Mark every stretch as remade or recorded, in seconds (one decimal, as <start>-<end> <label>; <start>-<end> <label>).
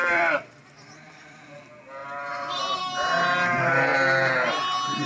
0.0-1.4 remade; 1.4-2.0 recorded; 2.0-2.8 remade; 2.8-5.1 recorded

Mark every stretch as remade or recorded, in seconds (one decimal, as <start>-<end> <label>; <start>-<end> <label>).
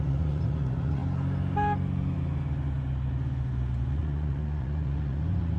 0.0-1.0 remade; 1.0-3.9 recorded; 3.9-5.6 remade